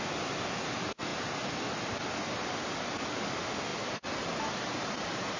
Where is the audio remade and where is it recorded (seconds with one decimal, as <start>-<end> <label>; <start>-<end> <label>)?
0.0-3.7 recorded; 3.7-4.9 remade; 4.9-5.4 recorded